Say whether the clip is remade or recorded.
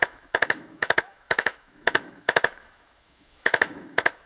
remade